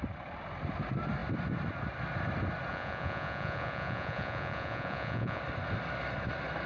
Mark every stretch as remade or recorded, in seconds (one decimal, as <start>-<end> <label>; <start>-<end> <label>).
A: 0.0-2.7 recorded; 2.7-5.4 remade; 5.4-6.7 recorded